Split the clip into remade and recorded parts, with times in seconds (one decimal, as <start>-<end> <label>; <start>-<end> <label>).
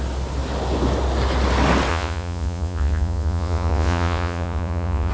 0.0-1.9 recorded; 1.9-5.1 remade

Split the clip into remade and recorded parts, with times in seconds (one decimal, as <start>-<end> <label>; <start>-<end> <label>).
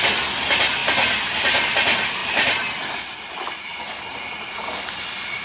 0.0-5.4 recorded